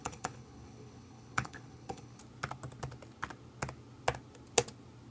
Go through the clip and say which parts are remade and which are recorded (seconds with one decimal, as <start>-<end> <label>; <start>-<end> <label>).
0.0-2.2 remade; 2.2-5.1 recorded

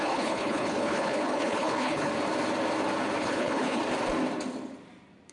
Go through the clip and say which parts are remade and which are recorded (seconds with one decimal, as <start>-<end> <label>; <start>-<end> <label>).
0.0-2.1 remade; 2.1-3.2 recorded; 3.2-3.8 remade; 3.8-5.3 recorded

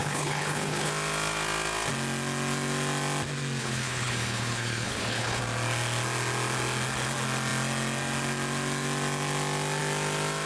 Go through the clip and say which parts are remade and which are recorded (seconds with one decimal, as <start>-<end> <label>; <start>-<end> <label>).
0.0-0.9 remade; 0.9-3.6 recorded; 3.6-5.4 remade; 5.4-10.5 recorded

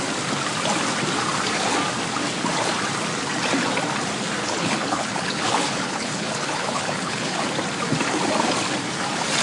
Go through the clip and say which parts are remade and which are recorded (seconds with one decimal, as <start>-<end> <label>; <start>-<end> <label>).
0.0-4.4 recorded; 4.4-7.4 remade; 7.4-9.4 recorded

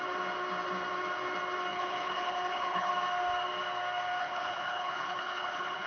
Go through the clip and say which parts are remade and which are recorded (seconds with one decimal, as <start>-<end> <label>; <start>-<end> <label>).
0.0-1.7 recorded; 1.7-2.9 remade; 2.9-4.2 recorded; 4.2-5.9 remade

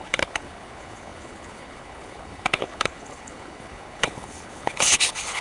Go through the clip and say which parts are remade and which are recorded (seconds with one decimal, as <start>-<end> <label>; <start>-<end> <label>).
0.0-5.4 remade

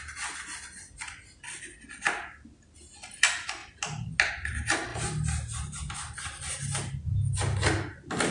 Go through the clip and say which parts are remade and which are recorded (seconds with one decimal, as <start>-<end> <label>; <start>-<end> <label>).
0.0-8.3 recorded

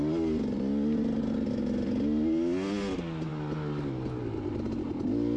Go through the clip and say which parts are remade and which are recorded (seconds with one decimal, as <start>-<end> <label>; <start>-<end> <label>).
0.0-5.4 recorded